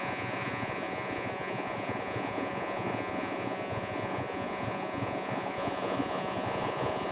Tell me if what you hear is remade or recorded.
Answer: remade